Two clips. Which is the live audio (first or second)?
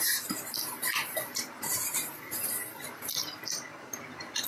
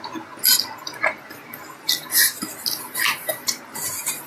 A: second